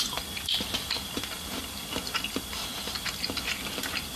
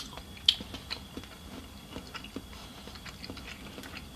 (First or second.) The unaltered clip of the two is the second